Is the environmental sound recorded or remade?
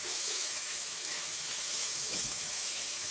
remade